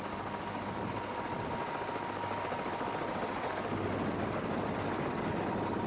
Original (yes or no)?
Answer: yes